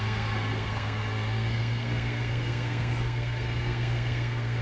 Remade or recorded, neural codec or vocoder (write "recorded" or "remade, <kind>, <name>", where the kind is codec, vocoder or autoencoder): remade, codec, SNAC